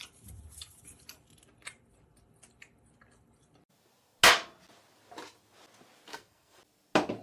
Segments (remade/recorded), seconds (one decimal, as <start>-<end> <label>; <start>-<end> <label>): 0.0-6.1 recorded; 6.1-6.6 remade; 6.6-7.2 recorded